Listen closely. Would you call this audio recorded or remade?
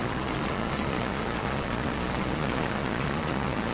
remade